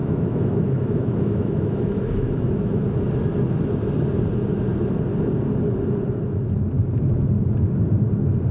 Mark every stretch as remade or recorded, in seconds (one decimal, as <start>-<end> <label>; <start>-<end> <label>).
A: 0.0-2.8 remade; 2.8-8.5 recorded